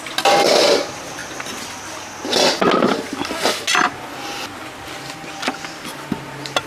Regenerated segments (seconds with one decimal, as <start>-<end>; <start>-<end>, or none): none